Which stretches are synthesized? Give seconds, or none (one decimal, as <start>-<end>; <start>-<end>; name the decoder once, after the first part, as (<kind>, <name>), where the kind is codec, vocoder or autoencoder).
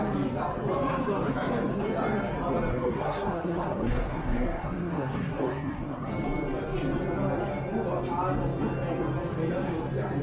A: 2.7-6.1 (codec, SNAC)